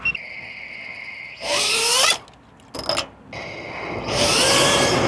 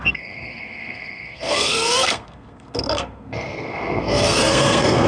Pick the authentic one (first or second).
first